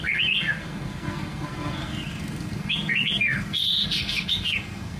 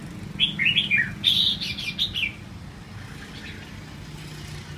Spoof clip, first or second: first